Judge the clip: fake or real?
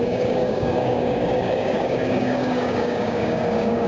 fake